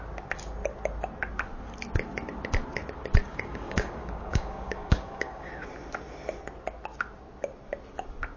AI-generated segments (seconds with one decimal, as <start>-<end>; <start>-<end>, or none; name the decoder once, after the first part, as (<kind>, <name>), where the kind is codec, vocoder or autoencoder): 3.2-5.5 (codec, DAC)